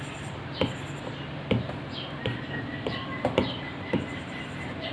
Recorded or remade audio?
recorded